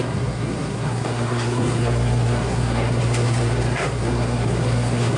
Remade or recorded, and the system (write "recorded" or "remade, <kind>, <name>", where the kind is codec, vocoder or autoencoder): remade, codec, SNAC